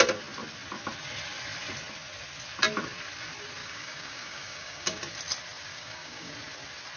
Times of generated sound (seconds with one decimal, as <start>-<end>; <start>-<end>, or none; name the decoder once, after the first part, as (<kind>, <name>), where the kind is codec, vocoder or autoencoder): 3.6-5.0 (codec, DAC); 5.7-6.3